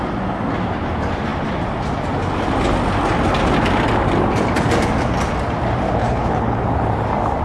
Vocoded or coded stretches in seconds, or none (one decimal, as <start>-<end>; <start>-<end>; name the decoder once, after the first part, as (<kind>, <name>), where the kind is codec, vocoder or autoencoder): 6.0-6.6 (codec, HILCodec)